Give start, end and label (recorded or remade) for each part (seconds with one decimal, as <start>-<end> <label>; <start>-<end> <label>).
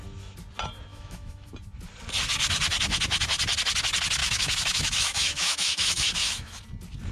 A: 0.0-0.9 recorded; 0.9-1.5 remade; 1.5-4.2 recorded; 4.2-6.6 remade; 6.6-7.1 recorded